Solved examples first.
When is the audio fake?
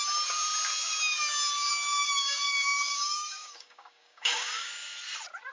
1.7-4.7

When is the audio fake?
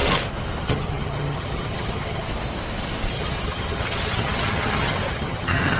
0.6-2.3; 3.1-5.8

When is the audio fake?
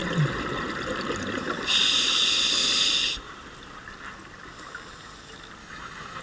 5.6-6.2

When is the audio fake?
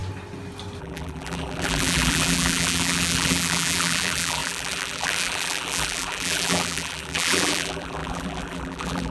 0.8-9.1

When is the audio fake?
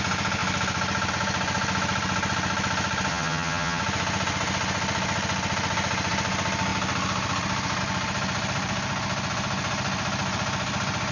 3.1-3.8